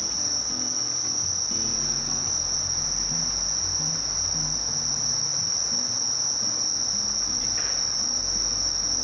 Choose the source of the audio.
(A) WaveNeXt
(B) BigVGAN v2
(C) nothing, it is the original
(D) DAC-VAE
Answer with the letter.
C